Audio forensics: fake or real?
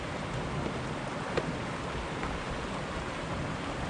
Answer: real